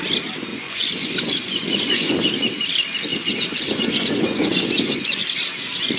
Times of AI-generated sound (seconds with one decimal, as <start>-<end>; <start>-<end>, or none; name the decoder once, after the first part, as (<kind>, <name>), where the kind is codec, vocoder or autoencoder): 0.5-2.1 (vocoder, Vocos); 3.1-5.2